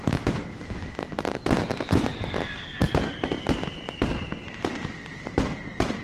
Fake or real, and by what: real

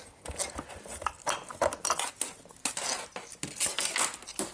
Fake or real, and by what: real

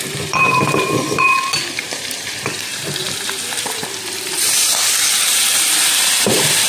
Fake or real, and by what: fake, vocoder, BigVGAN v2